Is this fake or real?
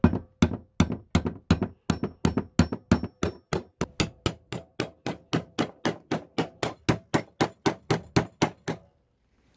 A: real